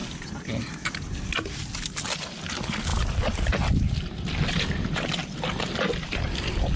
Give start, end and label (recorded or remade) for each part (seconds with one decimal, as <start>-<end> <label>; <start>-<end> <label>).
0.0-6.8 recorded